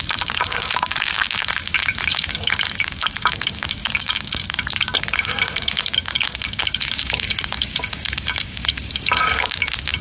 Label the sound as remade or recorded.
remade